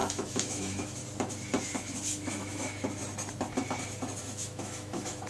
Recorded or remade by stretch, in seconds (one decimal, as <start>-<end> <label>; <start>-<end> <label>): 0.0-1.0 remade; 1.0-1.8 recorded; 1.8-3.0 remade; 3.0-4.2 recorded; 4.2-5.3 remade